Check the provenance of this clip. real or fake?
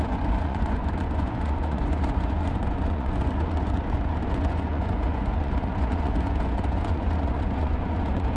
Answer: fake